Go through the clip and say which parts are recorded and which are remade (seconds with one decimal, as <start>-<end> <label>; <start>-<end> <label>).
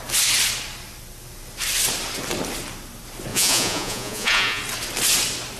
0.0-3.3 recorded; 3.3-4.6 remade; 4.6-5.6 recorded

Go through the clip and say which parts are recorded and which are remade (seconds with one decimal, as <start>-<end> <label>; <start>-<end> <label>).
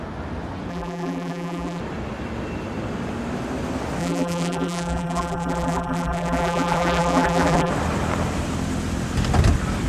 0.0-0.7 recorded; 0.7-1.8 remade; 1.8-4.0 recorded; 4.0-7.7 remade; 7.7-9.9 recorded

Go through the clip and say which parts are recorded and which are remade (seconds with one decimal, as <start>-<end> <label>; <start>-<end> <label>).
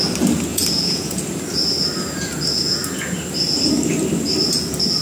0.0-0.5 recorded; 0.5-1.2 remade; 1.2-5.0 recorded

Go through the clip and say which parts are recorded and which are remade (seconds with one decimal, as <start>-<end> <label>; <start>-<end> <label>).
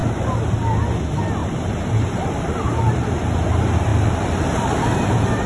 0.0-1.4 recorded; 1.4-3.1 remade; 3.1-3.9 recorded; 3.9-5.5 remade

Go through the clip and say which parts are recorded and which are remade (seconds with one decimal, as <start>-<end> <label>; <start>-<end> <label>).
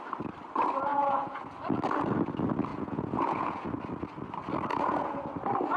0.0-0.9 recorded; 0.9-1.5 remade; 1.5-2.7 recorded; 2.7-3.7 remade; 3.7-4.7 recorded; 4.7-5.2 remade; 5.2-5.8 recorded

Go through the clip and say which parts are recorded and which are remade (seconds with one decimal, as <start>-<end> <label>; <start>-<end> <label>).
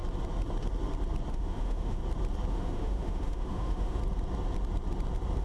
0.0-1.3 recorded; 1.3-2.0 remade; 2.0-2.5 recorded; 2.5-4.0 remade; 4.0-5.4 recorded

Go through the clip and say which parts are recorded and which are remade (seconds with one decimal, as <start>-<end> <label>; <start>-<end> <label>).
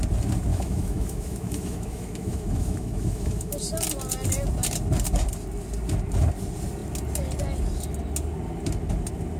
0.0-0.5 recorded; 0.5-3.5 remade; 3.5-9.4 recorded